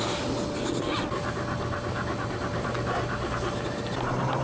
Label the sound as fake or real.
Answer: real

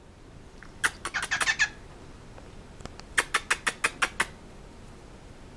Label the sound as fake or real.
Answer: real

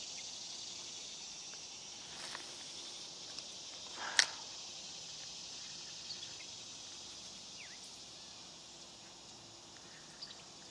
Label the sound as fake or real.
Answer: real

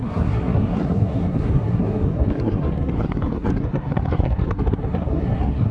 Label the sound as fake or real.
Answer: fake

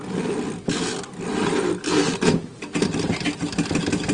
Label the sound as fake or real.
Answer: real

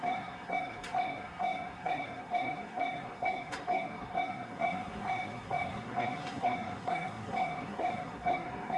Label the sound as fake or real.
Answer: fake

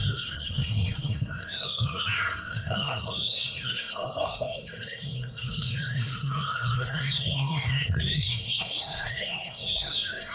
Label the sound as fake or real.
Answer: fake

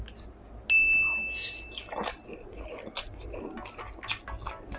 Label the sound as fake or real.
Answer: real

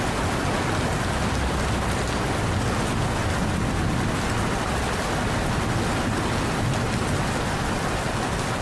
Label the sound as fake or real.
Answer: real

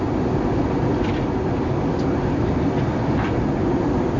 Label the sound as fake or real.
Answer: real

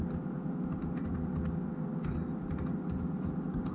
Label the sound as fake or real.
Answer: real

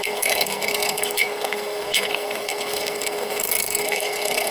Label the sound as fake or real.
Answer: fake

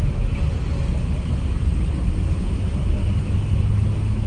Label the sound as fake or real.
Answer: real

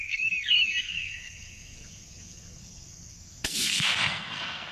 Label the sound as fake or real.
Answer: fake